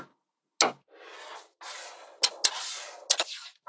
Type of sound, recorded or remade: recorded